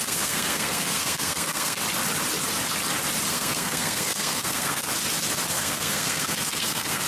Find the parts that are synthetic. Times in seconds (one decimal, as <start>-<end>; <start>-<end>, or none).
0.0-1.8; 3.3-4.9; 5.5-7.1